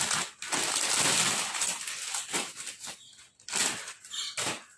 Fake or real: real